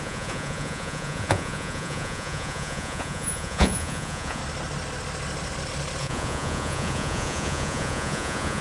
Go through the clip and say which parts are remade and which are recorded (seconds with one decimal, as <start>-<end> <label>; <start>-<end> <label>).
0.0-4.4 remade; 4.4-6.0 recorded; 6.0-8.6 remade